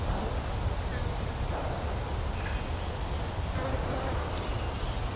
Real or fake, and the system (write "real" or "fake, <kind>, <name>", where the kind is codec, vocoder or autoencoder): real